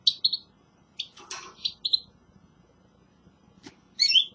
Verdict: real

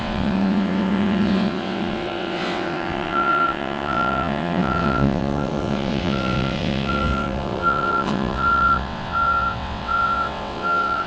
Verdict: fake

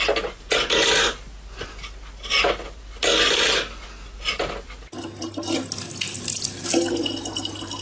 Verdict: real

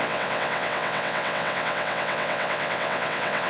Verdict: fake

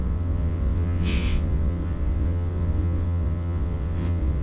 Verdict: fake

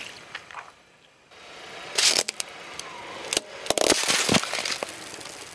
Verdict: real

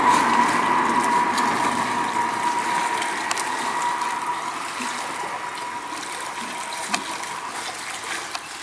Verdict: real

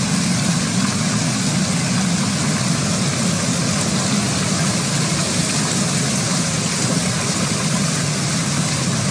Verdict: real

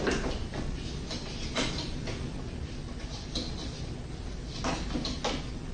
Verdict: real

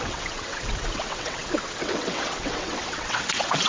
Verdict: fake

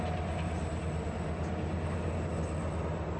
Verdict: real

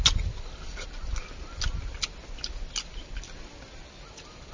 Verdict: real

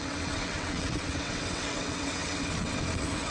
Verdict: fake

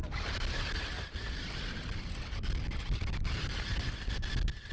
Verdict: real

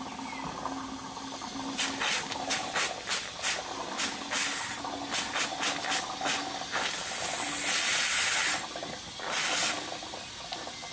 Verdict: real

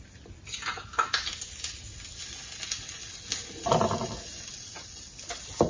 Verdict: real